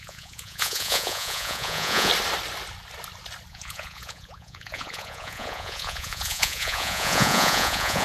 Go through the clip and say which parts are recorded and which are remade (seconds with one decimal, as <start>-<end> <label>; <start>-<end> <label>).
0.0-2.1 remade; 2.1-3.5 recorded; 3.5-8.0 remade